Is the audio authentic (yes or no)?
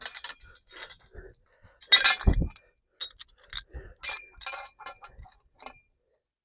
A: yes